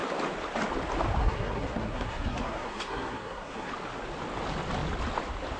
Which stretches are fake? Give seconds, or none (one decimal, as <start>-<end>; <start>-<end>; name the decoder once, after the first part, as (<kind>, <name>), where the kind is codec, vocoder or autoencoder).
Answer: 1.2-3.7 (codec, SNAC)